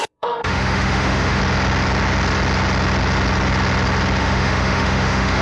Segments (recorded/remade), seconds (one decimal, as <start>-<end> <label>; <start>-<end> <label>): 0.0-1.4 remade; 1.4-4.2 recorded; 4.2-5.4 remade